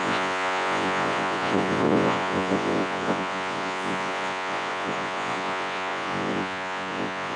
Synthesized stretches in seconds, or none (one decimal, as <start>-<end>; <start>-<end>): 0.0-7.4